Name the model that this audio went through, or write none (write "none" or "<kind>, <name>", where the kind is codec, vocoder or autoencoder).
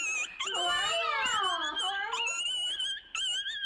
none